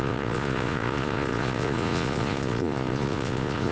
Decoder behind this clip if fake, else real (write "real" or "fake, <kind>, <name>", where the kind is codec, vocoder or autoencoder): fake, vocoder, Vocos